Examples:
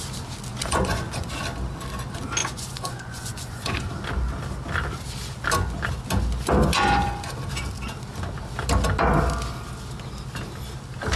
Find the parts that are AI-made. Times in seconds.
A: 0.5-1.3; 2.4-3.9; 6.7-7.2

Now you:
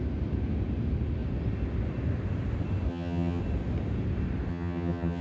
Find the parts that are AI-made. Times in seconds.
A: 2.9-3.4; 4.5-5.2

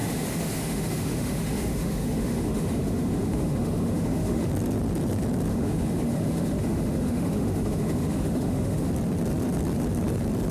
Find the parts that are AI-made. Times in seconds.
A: 0.0-4.5; 5.5-8.9

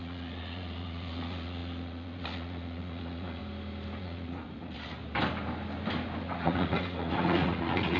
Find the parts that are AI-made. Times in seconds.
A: 0.0-3.4; 4.0-5.0; 6.2-8.0

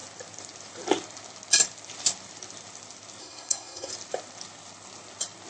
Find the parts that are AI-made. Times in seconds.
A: 3.2-3.9

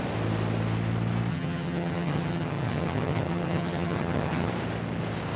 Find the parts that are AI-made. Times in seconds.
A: 1.3-4.5

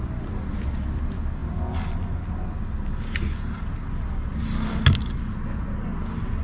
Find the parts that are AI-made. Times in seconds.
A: none